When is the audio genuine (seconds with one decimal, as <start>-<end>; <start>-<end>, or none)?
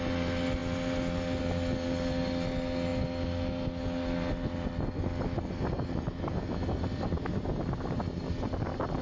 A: 0.0-9.0